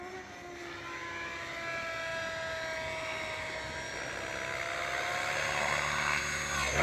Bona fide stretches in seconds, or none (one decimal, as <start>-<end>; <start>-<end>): 0.0-6.8